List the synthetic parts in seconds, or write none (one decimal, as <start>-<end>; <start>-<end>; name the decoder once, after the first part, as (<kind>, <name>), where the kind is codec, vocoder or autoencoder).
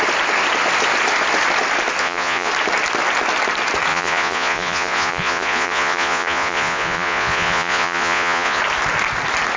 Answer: 2.0-2.5 (vocoder, Vocos); 3.9-8.6